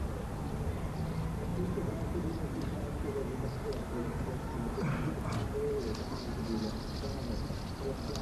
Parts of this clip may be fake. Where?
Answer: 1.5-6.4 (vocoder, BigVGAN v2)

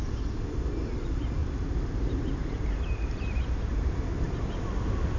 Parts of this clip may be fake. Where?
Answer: 1.4-4.0 (vocoder, BigVGAN v2)